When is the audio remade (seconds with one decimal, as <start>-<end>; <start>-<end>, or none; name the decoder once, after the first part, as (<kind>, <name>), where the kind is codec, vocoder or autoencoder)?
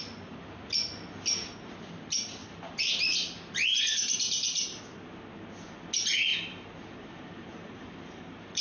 2.4-4.8 (vocoder, BigVGAN v2); 6.3-8.6